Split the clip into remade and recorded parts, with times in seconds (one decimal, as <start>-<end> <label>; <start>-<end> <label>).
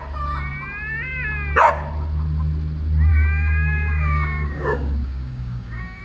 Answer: 0.0-3.1 recorded; 3.1-6.0 remade